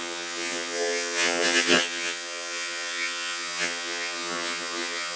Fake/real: fake